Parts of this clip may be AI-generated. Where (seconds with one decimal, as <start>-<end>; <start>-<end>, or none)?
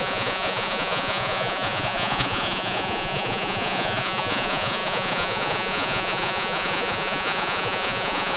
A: 0.0-8.4